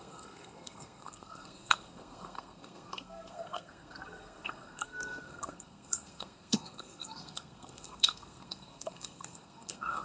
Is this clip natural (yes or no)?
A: no